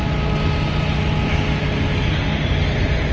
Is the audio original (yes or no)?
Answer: yes